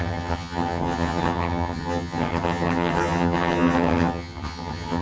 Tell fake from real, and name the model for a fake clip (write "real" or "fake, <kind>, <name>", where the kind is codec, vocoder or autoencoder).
fake, vocoder, HiFi-GAN